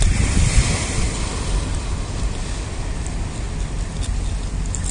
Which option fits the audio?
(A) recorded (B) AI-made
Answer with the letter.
A